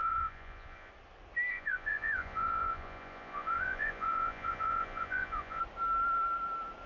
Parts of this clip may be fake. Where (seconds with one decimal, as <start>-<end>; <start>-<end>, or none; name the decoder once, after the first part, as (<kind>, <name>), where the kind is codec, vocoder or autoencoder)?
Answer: 0.0-0.9 (vocoder, Vocos); 1.5-5.6